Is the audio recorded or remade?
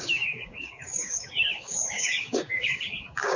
remade